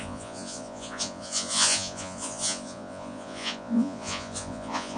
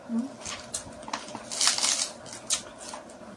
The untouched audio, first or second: second